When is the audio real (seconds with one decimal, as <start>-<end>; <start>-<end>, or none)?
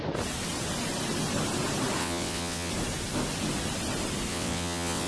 0.0-2.0; 2.7-4.3